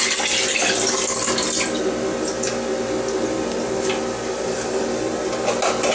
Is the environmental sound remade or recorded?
recorded